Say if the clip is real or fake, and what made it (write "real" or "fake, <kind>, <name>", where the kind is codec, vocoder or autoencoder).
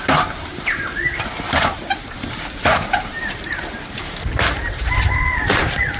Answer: fake, vocoder, BigVGAN v2